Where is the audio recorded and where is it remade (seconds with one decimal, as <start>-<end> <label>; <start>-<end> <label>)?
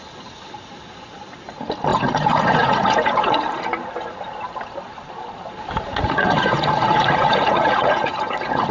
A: 0.0-1.9 recorded; 1.9-3.5 remade; 3.5-5.9 recorded; 5.9-8.7 remade